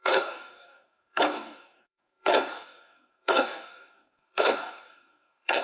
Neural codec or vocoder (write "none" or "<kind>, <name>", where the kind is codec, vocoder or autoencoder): codec, DAC